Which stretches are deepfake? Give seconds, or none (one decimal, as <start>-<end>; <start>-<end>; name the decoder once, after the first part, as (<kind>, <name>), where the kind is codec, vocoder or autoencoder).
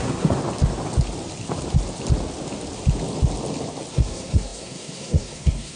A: 0.0-0.4 (codec, SNAC); 3.9-5.8